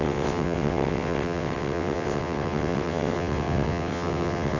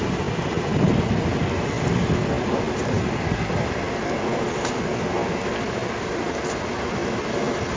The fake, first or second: first